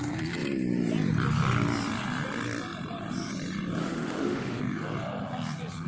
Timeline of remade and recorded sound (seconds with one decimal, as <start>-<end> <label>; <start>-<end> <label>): 0.0-3.8 recorded; 3.8-4.6 remade; 4.6-5.9 recorded